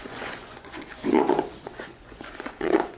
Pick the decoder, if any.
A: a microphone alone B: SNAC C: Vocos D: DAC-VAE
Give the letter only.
C